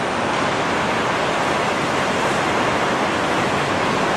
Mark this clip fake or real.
real